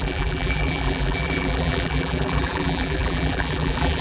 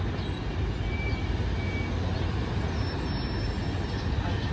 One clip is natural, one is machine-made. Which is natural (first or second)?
second